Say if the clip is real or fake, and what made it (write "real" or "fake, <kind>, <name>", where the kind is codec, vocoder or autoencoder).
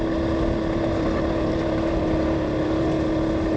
real